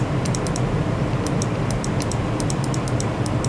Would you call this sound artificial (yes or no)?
yes